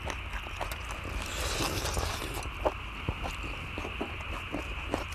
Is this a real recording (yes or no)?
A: yes